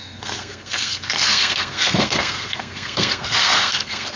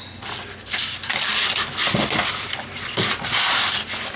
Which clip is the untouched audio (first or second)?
second